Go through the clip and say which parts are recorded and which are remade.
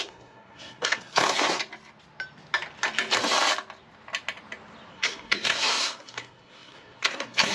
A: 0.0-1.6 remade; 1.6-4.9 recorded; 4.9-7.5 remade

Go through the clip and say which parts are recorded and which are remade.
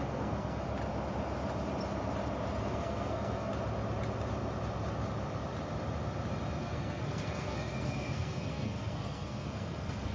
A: 0.0-0.7 remade; 0.7-2.6 recorded; 2.6-3.5 remade; 3.5-6.6 recorded; 6.6-10.1 remade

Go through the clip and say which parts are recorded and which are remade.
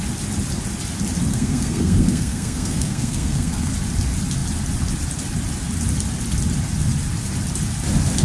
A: 0.0-1.3 recorded; 1.3-3.7 remade; 3.7-8.2 recorded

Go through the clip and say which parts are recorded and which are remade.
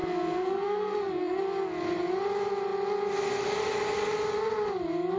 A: 0.0-1.4 remade; 1.4-5.2 recorded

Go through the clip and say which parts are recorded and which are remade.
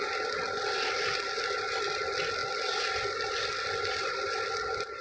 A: 0.0-5.0 recorded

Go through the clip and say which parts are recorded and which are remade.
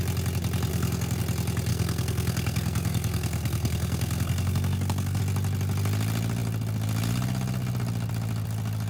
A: 0.0-0.7 recorded; 0.7-1.2 remade; 1.2-1.7 recorded; 1.7-5.2 remade; 5.2-8.9 recorded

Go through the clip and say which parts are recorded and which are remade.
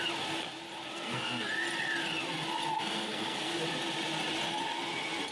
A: 0.0-0.9 recorded; 0.9-1.5 remade; 1.5-2.7 recorded; 2.7-3.6 remade; 3.6-5.3 recorded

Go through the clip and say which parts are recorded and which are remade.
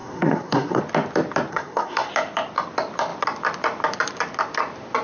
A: 0.0-0.8 remade; 0.8-1.5 recorded; 1.5-2.1 remade; 2.1-5.0 recorded